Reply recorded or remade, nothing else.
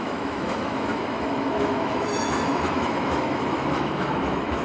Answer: remade